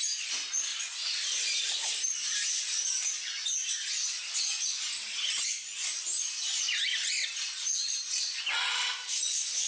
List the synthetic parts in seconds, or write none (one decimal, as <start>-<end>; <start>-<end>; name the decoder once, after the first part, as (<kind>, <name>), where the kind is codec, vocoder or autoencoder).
none